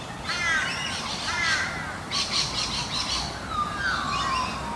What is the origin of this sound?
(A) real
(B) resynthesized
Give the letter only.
A